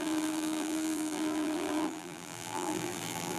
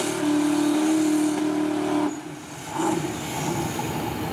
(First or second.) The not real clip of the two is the first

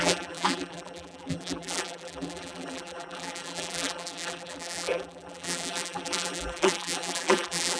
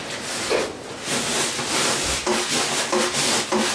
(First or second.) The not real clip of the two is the first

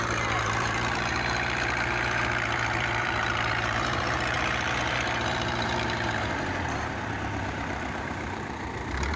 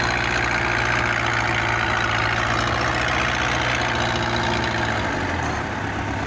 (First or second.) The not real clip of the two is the first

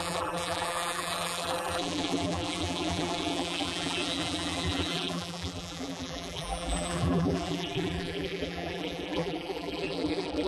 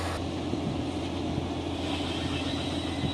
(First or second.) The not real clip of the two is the first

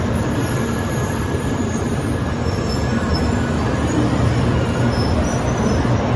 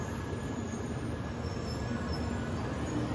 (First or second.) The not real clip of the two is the first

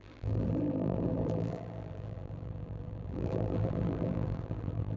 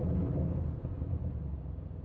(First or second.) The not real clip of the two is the first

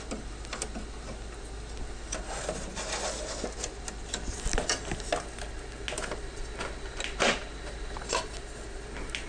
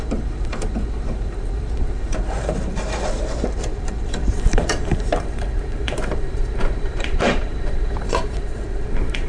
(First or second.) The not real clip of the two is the second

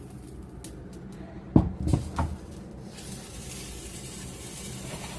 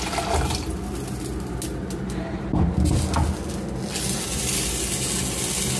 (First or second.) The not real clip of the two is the first